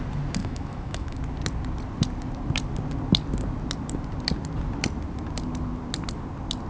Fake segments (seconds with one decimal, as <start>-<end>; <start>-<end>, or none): 0.4-1.2

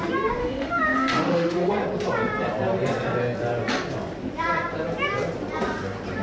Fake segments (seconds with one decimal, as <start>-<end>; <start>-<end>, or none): 0.4-1.7

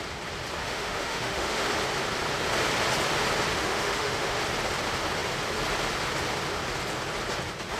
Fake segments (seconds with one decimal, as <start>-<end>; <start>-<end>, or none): 0.6-1.7; 3.5-4.4

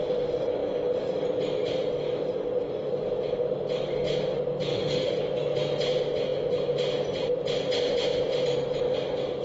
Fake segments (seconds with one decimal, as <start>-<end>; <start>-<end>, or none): 4.7-5.2

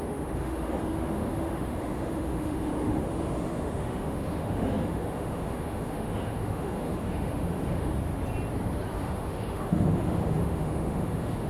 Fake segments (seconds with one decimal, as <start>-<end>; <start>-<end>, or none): 0.0-8.0; 9.0-11.5

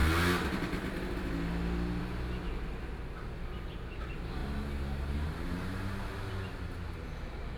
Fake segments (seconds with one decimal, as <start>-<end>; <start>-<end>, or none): none

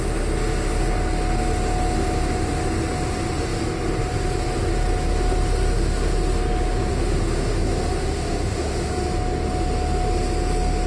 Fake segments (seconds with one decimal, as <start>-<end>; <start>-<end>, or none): 6.9-8.9